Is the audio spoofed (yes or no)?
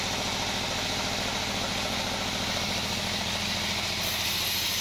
no